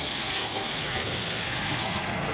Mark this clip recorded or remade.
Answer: remade